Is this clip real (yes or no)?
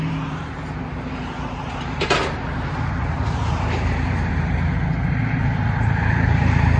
no